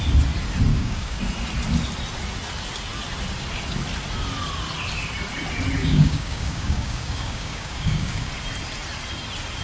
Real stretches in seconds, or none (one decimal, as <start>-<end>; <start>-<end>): 0.0-0.7; 1.2-5.8; 8.3-9.6